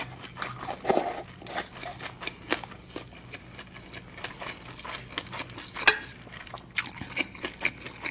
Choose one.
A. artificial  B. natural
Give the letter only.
B